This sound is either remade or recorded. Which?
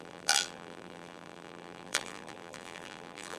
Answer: remade